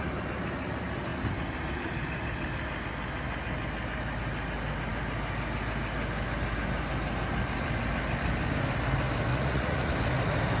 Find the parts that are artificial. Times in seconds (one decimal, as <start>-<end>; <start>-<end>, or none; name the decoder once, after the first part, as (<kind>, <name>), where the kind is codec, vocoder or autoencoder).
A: 9.3-9.9 (vocoder, Vocos)